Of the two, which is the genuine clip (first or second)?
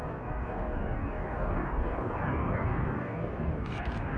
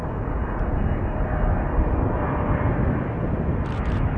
second